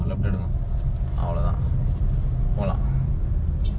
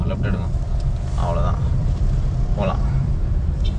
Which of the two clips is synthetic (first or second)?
second